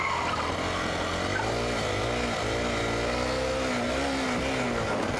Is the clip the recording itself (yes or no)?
yes